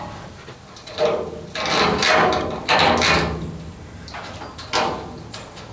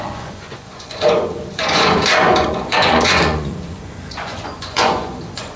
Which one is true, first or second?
first